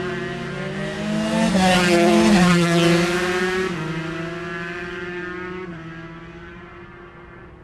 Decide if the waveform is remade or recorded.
recorded